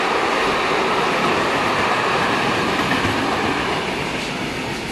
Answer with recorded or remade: recorded